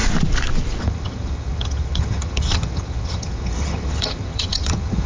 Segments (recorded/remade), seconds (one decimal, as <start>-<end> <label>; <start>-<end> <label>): 0.0-0.8 recorded; 0.8-5.1 remade